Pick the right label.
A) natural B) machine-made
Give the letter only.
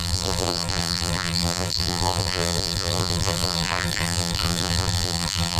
B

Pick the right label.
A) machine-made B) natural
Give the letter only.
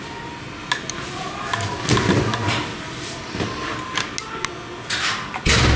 B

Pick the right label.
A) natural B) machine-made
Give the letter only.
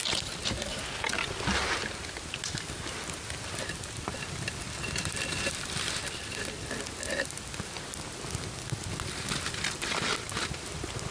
A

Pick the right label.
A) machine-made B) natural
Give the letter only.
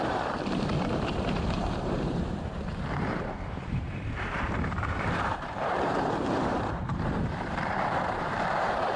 A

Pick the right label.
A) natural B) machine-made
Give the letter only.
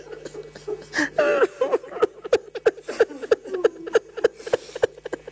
A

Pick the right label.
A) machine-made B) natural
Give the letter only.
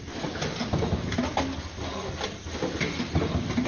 B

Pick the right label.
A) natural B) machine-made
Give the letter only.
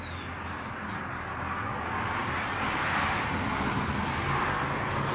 A